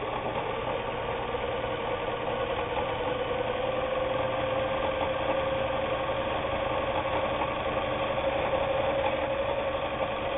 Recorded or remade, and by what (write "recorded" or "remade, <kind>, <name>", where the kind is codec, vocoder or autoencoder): recorded